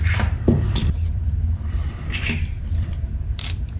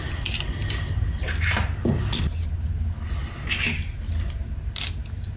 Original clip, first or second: second